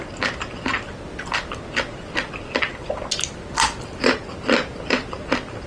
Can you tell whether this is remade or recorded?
recorded